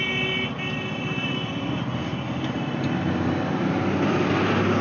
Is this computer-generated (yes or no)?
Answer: no